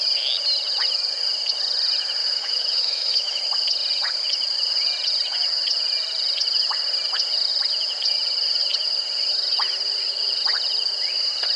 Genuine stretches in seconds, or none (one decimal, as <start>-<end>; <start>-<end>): 0.0-2.2; 3.4-11.6